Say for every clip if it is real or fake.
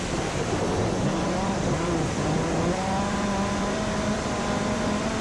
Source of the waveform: fake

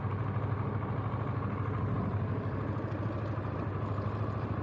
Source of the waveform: real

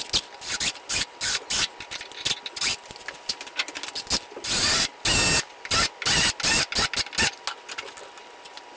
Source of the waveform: real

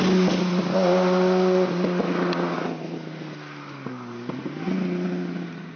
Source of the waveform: real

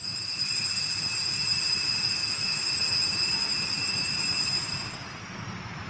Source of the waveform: fake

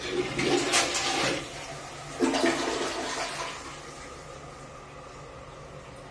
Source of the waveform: real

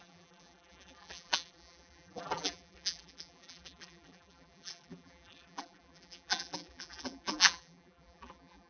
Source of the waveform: fake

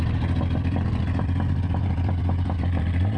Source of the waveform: fake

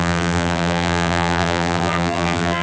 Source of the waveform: fake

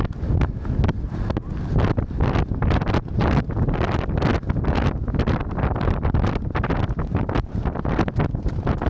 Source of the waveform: real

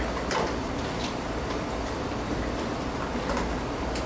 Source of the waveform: real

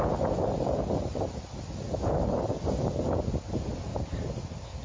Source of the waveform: real